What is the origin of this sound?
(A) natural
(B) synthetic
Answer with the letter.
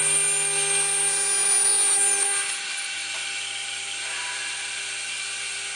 A